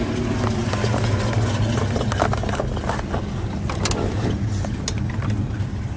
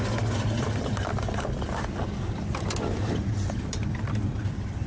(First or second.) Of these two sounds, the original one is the first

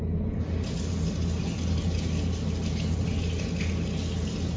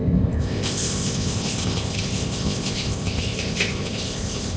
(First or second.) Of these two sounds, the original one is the first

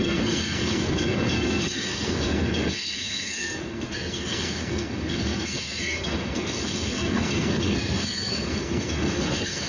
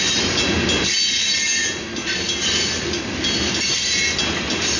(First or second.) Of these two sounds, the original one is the second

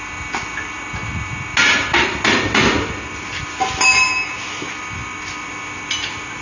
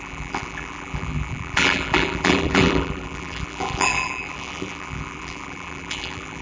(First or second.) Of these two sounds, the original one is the first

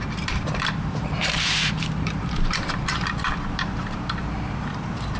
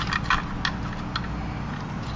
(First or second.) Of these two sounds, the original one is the second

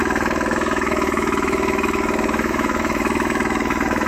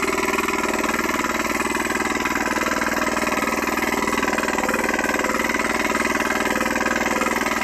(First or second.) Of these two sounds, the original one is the second